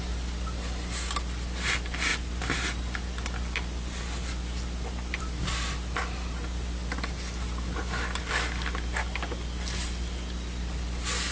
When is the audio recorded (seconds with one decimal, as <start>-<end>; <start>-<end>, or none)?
0.0-11.3